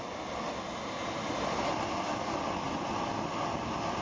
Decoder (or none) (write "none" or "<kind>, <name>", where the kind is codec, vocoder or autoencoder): none